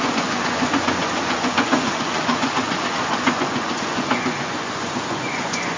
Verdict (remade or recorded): remade